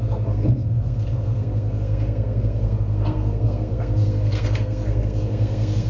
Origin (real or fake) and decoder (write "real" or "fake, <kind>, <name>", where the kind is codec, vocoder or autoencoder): fake, codec, SNAC